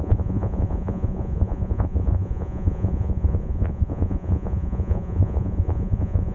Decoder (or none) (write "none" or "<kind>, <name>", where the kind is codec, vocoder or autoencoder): vocoder, Vocos